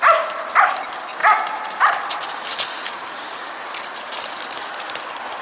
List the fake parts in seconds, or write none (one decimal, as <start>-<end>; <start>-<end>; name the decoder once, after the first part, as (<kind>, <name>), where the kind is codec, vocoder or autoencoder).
1.2-4.4 (vocoder, BigVGAN v2)